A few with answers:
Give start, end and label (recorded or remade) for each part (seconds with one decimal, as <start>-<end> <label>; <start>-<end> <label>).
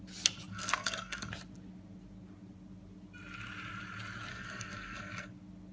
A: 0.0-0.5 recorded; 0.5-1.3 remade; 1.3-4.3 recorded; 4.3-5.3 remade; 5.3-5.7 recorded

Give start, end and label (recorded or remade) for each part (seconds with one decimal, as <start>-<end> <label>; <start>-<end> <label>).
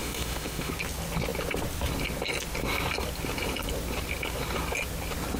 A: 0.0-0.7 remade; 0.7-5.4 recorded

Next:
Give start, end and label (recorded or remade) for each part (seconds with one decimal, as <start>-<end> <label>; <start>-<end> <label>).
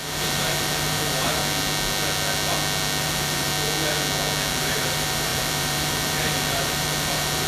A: 0.0-1.4 remade; 1.4-3.0 recorded; 3.0-3.5 remade; 3.5-4.5 recorded; 4.5-7.5 remade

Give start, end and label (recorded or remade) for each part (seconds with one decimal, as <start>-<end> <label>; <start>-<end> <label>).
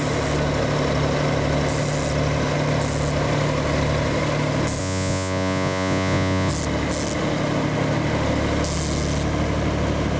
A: 0.0-4.8 recorded; 4.8-6.5 remade; 6.5-10.2 recorded